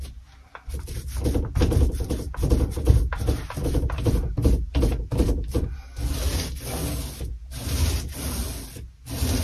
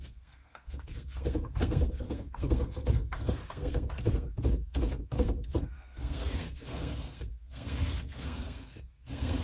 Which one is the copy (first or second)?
second